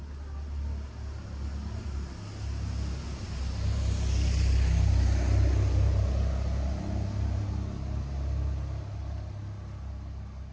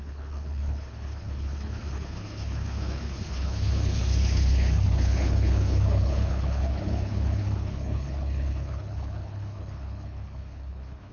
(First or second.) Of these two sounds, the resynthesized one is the second